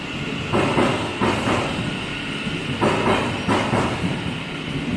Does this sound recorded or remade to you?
recorded